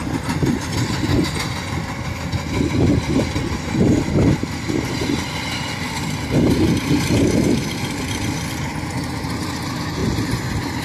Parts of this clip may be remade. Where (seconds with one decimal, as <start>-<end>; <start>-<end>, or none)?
none